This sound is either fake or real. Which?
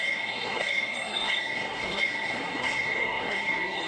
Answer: fake